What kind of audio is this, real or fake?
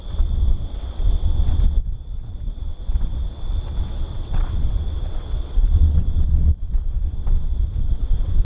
fake